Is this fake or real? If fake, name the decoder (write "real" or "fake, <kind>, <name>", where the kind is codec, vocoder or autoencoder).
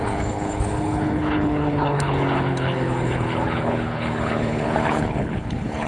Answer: fake, codec, HILCodec